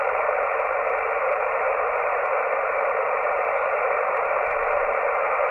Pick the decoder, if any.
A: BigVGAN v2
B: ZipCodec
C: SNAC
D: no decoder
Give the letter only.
A